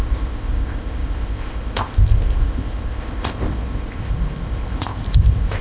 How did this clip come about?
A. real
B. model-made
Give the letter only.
B